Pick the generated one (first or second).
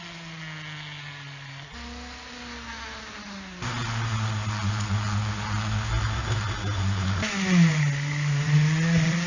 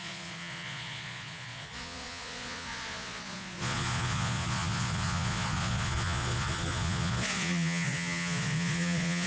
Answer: second